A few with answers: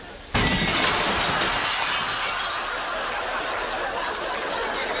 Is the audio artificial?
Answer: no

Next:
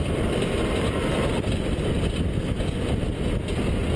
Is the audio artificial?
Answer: no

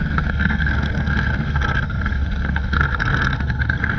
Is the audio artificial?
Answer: yes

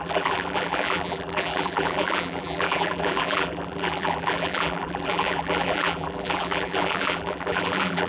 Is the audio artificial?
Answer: yes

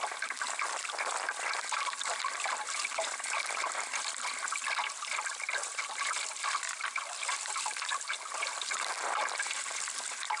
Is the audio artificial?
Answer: no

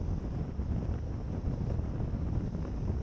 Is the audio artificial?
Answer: no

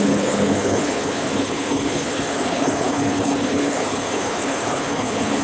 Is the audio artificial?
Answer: yes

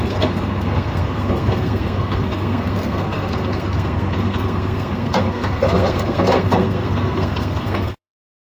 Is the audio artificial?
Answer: yes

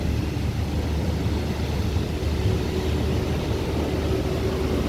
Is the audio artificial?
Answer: no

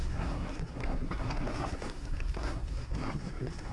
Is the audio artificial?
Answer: yes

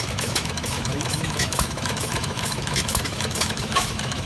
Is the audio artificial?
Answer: yes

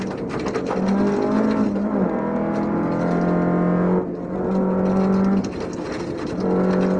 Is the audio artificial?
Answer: no